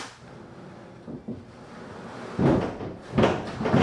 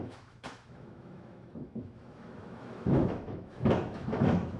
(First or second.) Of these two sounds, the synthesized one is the second